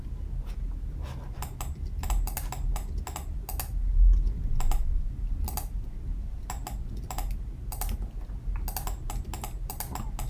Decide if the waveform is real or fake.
real